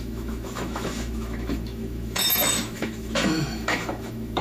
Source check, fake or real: fake